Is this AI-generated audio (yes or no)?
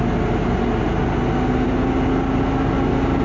no